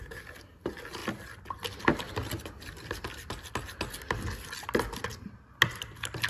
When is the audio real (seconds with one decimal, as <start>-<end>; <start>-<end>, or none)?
0.0-6.3

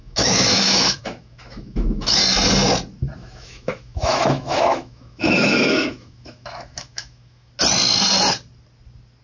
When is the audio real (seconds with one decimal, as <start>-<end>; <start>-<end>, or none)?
2.2-3.2; 7.5-9.2

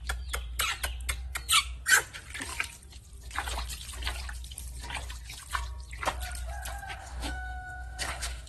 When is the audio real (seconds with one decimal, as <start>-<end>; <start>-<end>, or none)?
0.0-7.0

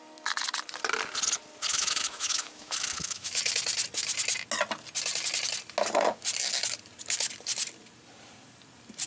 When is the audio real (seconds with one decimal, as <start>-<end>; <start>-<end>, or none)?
0.0-1.7; 3.4-9.1

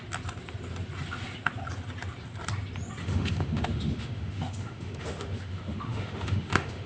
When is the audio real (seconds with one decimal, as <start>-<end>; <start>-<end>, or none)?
0.0-3.0

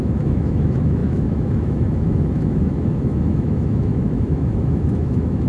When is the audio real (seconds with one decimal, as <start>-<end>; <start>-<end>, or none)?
none

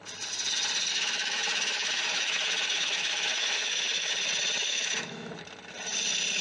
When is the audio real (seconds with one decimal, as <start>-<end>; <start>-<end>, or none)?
0.0-0.9; 4.1-4.6; 5.3-6.4

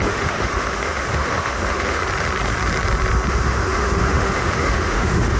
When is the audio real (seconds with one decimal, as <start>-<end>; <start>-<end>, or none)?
2.0-3.3